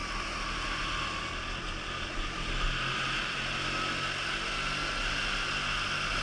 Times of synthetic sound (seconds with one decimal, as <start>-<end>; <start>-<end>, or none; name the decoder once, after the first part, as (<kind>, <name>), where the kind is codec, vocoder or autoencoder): none